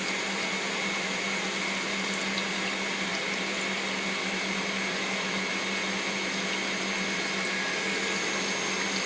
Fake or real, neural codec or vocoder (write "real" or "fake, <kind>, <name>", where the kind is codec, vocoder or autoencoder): real